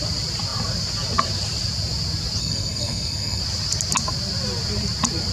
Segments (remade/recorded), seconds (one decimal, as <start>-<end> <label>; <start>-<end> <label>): 0.0-2.4 recorded; 2.4-3.4 remade; 3.4-5.3 recorded